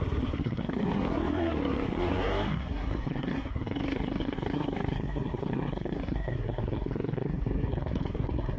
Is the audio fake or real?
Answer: fake